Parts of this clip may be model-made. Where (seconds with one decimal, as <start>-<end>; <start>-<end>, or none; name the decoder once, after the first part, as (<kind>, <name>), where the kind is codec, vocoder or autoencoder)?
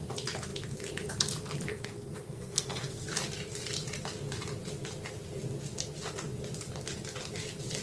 1.7-3.1 (codec, SNAC)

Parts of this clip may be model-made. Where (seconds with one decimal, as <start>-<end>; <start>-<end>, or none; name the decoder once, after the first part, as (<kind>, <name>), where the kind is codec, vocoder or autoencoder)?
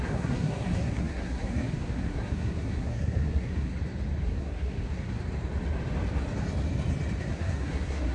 0.0-3.7 (codec, SNAC); 4.2-5.2; 7.2-8.1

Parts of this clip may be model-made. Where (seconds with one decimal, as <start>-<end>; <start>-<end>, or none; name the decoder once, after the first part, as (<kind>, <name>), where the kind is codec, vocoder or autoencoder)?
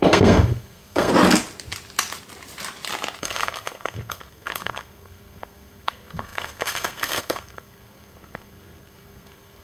0.0-1.1 (codec, SNAC); 3.2-9.6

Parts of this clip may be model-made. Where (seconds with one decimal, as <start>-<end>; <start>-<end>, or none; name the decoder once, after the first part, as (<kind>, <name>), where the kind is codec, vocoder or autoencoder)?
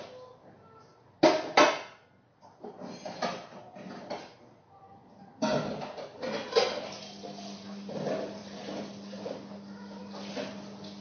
none